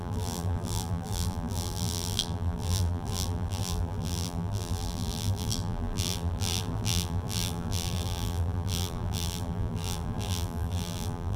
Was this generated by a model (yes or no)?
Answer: yes